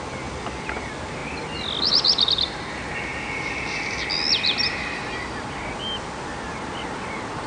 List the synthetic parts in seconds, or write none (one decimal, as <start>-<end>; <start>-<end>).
none